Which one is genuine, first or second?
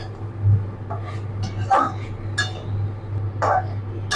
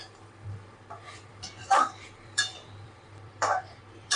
first